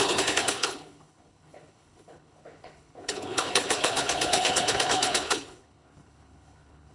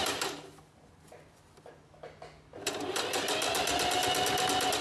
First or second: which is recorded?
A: second